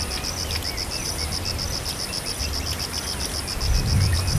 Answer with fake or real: real